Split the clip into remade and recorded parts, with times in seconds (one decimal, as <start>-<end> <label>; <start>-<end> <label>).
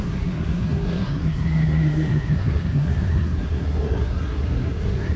0.0-5.2 remade